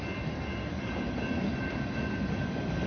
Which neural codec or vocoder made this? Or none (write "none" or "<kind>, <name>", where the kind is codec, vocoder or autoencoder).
none